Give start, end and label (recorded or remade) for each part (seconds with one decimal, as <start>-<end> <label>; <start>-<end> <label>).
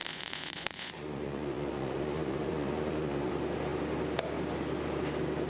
0.0-3.3 remade; 3.3-5.5 recorded